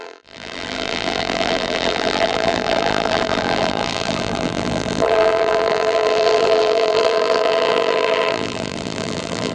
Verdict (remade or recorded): remade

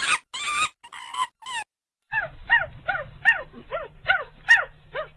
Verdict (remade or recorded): recorded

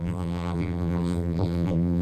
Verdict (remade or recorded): remade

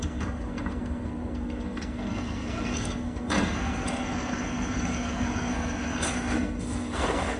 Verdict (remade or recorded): remade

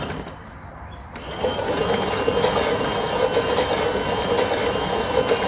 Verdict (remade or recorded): recorded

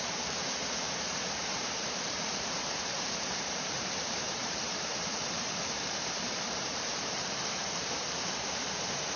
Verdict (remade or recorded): remade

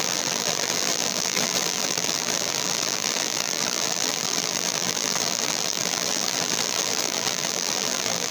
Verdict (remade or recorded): remade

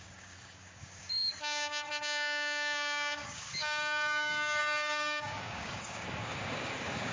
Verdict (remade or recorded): remade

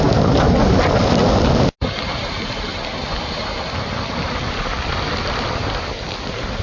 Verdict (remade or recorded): recorded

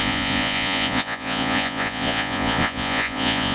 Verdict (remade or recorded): remade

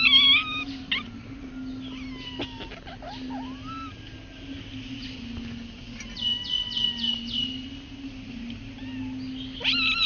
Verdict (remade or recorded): recorded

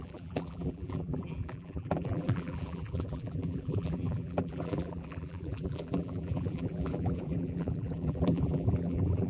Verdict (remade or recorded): remade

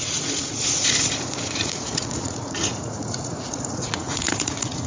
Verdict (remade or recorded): remade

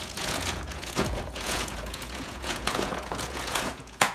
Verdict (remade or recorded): remade